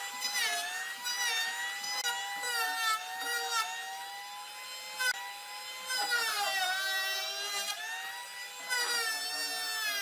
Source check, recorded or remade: recorded